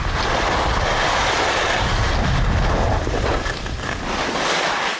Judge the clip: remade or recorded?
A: recorded